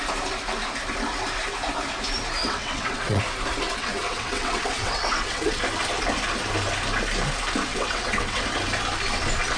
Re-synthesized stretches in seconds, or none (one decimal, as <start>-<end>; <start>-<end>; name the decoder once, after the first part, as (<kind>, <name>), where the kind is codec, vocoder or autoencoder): 2.4-3.2 (vocoder, WaveNeXt); 3.8-5.6; 7.7-8.4